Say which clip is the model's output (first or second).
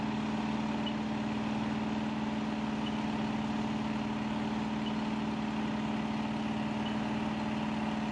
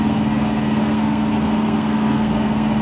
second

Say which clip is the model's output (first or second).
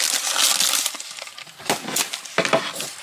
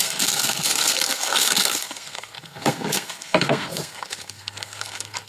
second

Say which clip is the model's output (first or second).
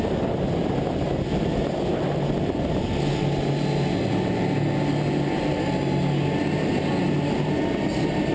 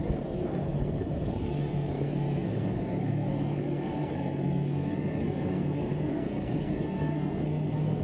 second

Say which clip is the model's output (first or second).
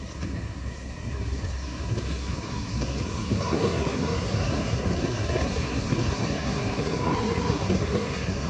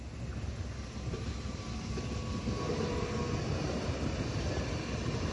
first